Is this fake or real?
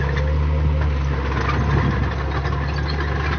real